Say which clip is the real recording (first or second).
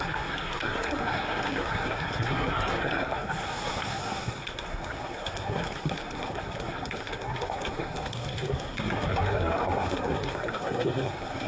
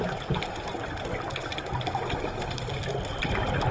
second